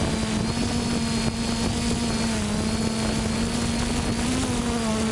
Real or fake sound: real